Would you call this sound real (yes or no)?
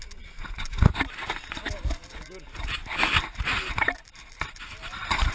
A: yes